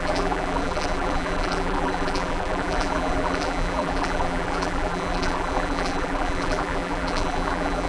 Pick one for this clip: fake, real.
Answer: fake